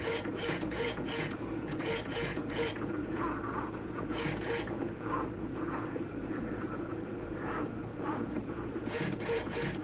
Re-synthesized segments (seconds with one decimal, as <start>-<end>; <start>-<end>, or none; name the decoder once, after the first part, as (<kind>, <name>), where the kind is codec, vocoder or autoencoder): 0.0-9.8 (vocoder, Vocos)

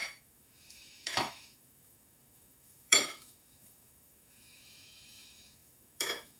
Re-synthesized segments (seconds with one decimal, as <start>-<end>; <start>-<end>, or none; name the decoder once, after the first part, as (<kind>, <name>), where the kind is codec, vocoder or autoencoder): 0.0-6.4 (autoencoder, DAC-VAE)

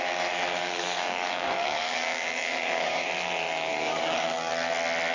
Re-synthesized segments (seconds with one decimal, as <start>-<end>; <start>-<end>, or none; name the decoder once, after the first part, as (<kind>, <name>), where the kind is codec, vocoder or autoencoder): 0.6-3.1 (codec, DAC); 3.7-4.5

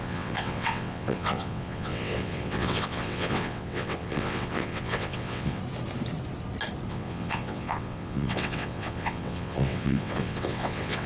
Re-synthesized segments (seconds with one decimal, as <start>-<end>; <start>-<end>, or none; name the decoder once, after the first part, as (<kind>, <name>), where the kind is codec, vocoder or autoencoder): 0.0-5.6 (vocoder, WaveNeXt); 6.9-11.1